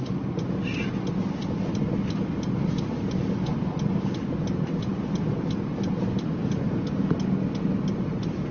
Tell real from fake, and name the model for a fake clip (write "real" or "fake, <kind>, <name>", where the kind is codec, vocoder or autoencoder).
real